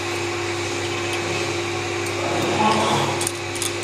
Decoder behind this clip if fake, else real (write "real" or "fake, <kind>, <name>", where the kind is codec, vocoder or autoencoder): real